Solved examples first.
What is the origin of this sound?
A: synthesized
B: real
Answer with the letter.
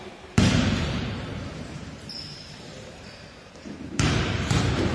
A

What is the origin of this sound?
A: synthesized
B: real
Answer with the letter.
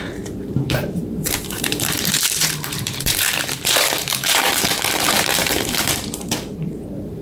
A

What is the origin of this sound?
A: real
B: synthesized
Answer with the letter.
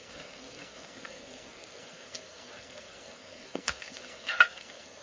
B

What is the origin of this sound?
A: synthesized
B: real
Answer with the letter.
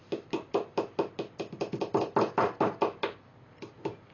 B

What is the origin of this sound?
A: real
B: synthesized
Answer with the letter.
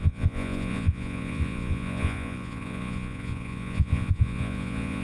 B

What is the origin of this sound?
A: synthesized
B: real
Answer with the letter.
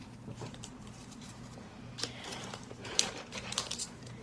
A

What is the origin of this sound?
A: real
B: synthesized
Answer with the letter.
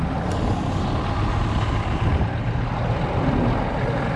A